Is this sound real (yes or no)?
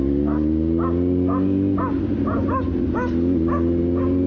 yes